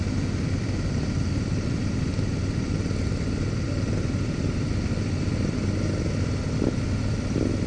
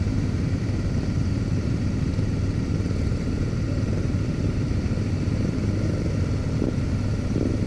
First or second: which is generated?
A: second